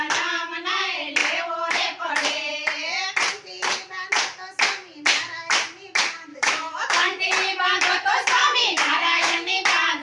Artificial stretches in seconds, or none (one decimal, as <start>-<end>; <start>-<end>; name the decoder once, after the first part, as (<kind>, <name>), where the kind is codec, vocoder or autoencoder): 6.3-7.2 (autoencoder, DAC-VAE); 8.4-9.5